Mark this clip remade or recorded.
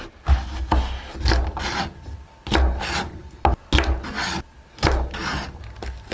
recorded